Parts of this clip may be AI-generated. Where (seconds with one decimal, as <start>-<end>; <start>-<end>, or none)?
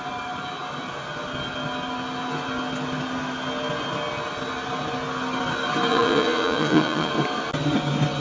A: 5.9-7.1